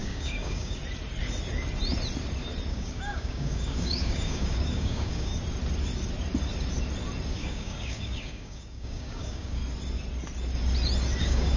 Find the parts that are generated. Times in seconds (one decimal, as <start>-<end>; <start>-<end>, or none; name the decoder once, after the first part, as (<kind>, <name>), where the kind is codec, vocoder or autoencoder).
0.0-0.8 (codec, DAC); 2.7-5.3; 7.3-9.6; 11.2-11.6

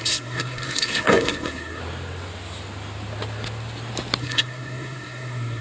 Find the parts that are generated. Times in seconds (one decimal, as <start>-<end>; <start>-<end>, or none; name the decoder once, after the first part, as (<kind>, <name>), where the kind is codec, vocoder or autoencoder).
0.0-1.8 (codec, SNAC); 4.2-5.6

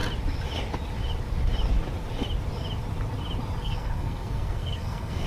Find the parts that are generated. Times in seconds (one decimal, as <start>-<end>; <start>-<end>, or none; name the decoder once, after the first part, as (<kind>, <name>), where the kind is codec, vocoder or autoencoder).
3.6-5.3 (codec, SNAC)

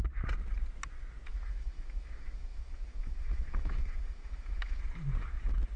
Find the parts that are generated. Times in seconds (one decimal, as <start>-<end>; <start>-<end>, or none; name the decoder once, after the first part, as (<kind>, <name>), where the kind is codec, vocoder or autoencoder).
1.3-4.8 (autoencoder, DAC-VAE)

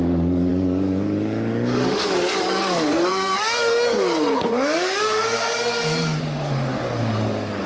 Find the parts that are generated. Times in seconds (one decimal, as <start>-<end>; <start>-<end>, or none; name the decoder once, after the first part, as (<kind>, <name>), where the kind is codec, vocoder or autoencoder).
0.0-7.7 (codec, DAC)

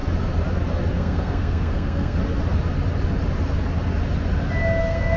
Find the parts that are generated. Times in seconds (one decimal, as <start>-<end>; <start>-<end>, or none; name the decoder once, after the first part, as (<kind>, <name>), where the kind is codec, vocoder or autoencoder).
0.9-2.2 (codec, SNAC); 4.8-5.2